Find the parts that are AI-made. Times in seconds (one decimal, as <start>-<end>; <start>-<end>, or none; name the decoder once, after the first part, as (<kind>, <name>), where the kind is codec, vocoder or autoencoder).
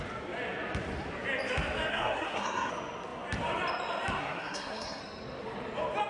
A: 1.9-2.7 (codec, SNAC); 4.2-5.0